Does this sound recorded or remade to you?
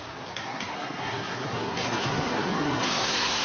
remade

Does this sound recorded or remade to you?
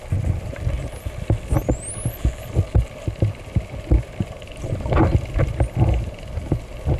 recorded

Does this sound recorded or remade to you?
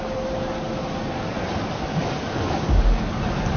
recorded